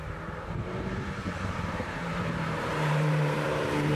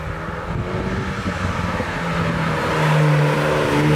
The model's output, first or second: first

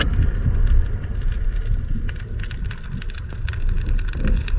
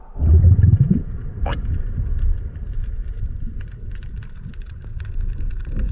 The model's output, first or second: second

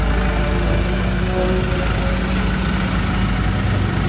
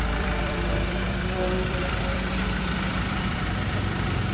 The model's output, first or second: second